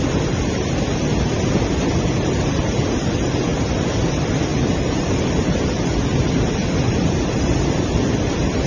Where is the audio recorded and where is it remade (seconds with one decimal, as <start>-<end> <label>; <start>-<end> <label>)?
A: 0.0-3.5 remade; 3.5-4.1 recorded; 4.1-8.7 remade